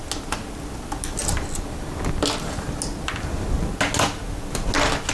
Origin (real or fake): real